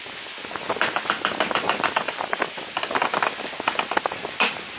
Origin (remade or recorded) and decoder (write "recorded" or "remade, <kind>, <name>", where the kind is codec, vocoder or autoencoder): recorded